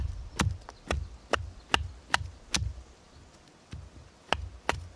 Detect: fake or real real